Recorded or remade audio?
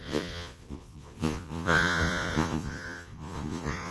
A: remade